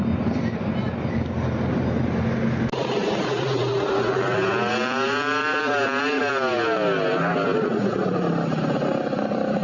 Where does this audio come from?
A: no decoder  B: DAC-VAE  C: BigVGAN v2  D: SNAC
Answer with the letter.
A